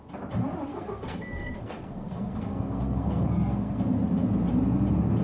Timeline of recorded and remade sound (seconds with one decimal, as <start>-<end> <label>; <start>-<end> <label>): 0.0-0.7 recorded; 0.7-3.8 remade; 3.8-5.2 recorded